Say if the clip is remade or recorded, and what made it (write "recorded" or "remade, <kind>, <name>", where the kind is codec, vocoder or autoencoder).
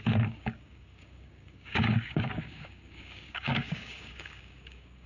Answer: remade, codec, DAC